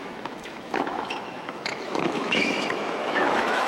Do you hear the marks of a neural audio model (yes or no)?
yes